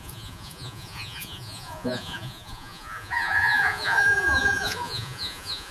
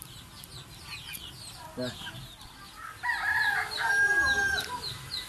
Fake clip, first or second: first